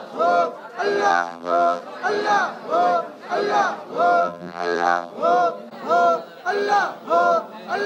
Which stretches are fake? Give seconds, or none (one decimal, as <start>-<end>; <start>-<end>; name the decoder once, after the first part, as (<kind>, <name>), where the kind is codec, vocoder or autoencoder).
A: 1.1-1.8 (vocoder, BigVGAN v2); 4.2-5.1